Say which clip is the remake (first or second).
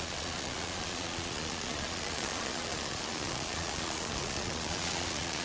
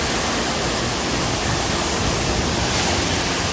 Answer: first